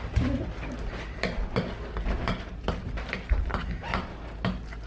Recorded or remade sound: recorded